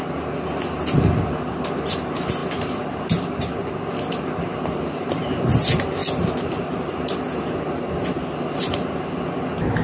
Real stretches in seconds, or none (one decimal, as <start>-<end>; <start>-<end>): 0.0-9.8